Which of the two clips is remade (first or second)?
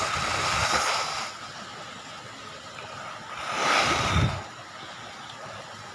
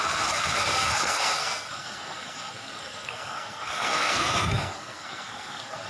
second